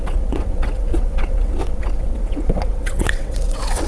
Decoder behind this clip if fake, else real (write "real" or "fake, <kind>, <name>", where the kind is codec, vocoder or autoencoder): fake, vocoder, WaveNeXt